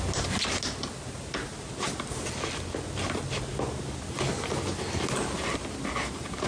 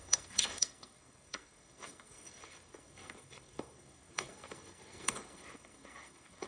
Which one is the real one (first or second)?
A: first